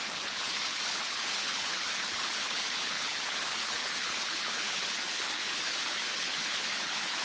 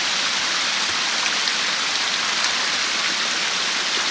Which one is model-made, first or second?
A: first